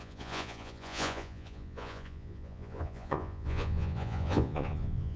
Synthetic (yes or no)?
yes